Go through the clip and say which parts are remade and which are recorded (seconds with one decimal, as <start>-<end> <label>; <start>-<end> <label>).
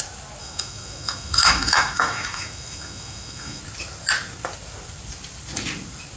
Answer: 0.0-0.4 recorded; 0.4-3.6 remade; 3.6-6.2 recorded